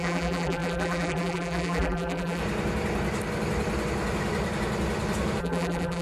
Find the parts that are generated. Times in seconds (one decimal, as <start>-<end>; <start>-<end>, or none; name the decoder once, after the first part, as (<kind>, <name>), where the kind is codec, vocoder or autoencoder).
0.0-2.4 (vocoder, BigVGAN v2); 5.4-6.0

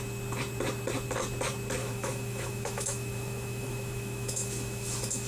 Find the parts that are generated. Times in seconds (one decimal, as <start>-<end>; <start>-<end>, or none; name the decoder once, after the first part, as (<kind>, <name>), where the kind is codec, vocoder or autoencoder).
1.8-5.3 (autoencoder, DAC-VAE)